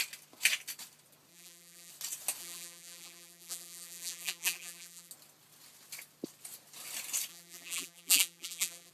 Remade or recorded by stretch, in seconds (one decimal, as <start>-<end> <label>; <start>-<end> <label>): 0.0-1.3 recorded; 1.3-1.9 remade; 1.9-2.4 recorded; 2.4-5.1 remade; 5.1-7.3 recorded; 7.3-8.9 remade